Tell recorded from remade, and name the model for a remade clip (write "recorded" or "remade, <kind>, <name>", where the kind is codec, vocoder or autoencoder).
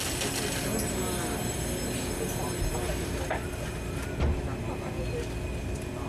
recorded